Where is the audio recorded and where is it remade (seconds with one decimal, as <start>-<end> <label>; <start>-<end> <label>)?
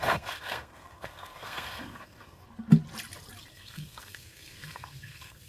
0.0-2.4 remade; 2.4-3.5 recorded; 3.5-5.5 remade